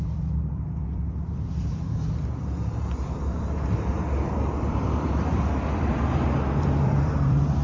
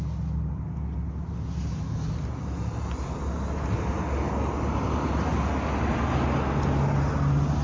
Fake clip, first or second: first